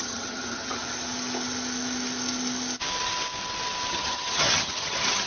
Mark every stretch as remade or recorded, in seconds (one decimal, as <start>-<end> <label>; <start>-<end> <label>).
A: 0.0-0.8 remade; 0.8-3.9 recorded; 3.9-5.3 remade